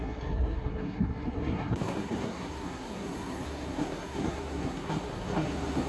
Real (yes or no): no